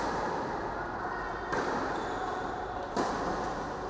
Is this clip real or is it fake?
real